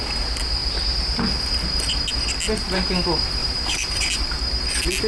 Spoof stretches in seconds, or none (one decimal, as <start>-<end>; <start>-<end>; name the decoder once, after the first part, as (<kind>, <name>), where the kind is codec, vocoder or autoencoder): 3.4-4.1 (vocoder, BigVGAN v2)